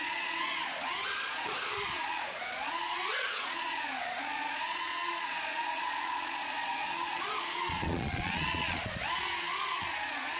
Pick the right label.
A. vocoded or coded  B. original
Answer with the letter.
A